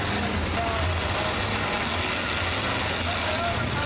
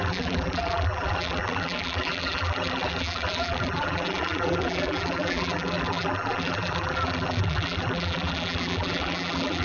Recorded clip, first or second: first